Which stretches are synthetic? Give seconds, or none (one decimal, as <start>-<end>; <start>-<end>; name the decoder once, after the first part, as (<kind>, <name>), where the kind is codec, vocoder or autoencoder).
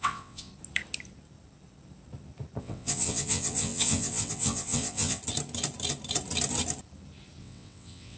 0.0-0.5 (vocoder, WaveNeXt); 2.6-5.2; 7.4-8.2